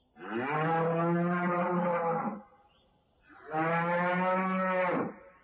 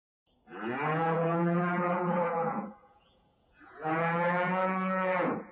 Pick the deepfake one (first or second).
second